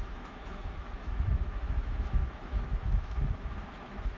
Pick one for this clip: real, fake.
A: fake